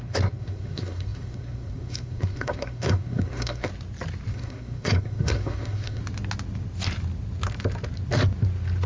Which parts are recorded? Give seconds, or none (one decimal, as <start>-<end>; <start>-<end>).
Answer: 3.7-4.3; 6.0-8.9